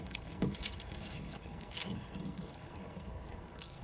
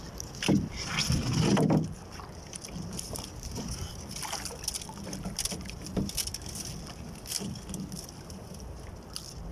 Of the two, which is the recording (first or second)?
second